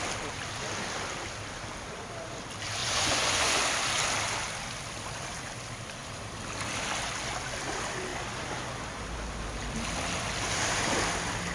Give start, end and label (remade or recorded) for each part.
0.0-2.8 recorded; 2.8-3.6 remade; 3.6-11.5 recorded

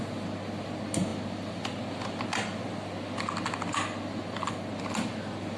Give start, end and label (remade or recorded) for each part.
0.0-5.6 recorded

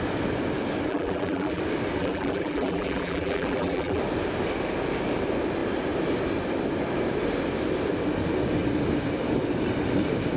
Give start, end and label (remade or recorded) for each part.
0.0-0.9 recorded; 0.9-1.6 remade; 1.6-2.0 recorded; 2.0-4.0 remade; 4.0-10.4 recorded

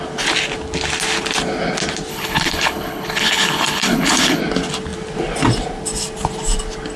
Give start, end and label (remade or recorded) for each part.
0.0-2.1 recorded; 2.1-4.4 remade; 4.4-7.0 recorded